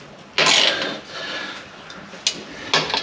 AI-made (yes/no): no